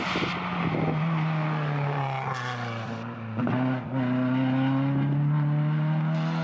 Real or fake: real